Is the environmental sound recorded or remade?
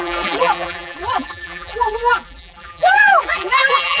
remade